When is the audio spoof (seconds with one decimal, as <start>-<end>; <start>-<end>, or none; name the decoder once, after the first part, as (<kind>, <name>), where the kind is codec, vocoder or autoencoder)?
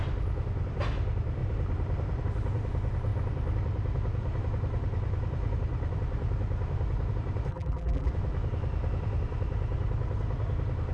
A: 7.5-8.1 (vocoder, BigVGAN v2)